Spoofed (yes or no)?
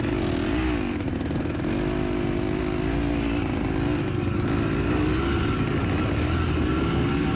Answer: no